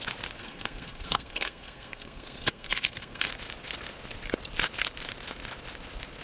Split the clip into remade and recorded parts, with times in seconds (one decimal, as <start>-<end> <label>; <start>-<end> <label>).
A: 0.0-0.4 recorded; 0.4-3.3 remade; 3.3-6.2 recorded